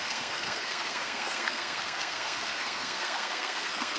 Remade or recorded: remade